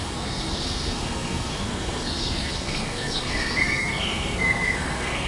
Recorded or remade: remade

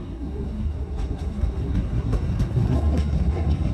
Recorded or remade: remade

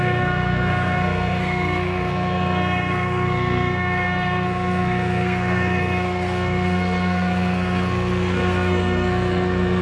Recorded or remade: remade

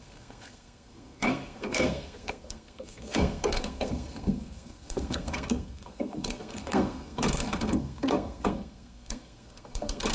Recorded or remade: remade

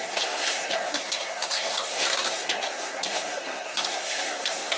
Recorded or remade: remade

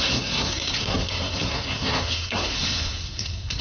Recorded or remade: remade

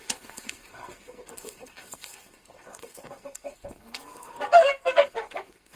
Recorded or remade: remade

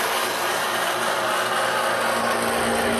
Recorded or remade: recorded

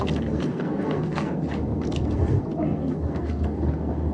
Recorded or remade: remade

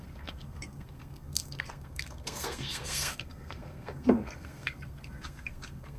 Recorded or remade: remade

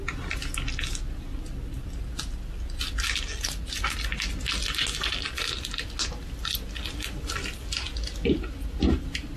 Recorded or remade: recorded